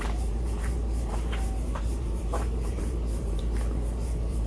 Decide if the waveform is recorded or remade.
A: remade